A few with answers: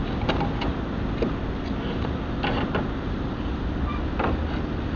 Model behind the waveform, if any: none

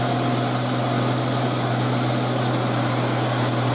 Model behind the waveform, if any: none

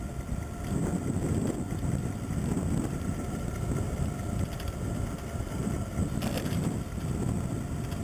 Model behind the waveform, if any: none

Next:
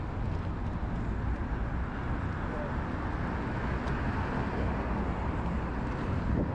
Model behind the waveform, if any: none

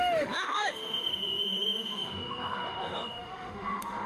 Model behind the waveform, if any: autoencoder, DAC-VAE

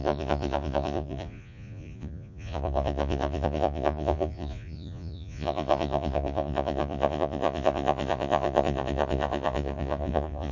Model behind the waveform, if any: vocoder, Vocos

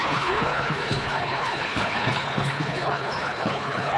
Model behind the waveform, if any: codec, HILCodec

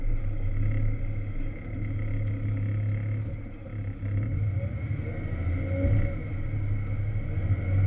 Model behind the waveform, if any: none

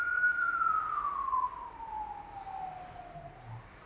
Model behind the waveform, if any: none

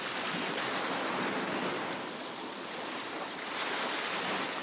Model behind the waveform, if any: none